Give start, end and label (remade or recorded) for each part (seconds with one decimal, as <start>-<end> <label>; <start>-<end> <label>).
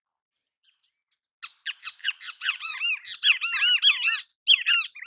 0.0-2.0 recorded; 2.0-2.8 remade; 2.8-5.1 recorded